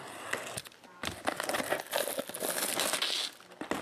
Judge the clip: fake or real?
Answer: real